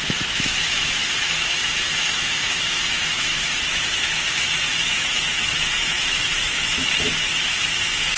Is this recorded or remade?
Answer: remade